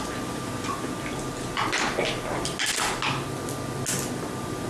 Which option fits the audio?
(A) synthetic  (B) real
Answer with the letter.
B